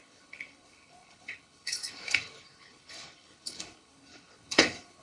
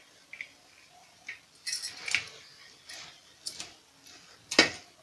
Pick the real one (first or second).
second